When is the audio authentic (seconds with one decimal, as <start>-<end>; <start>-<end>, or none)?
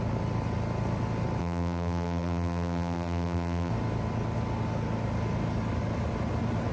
0.0-1.4; 3.7-6.7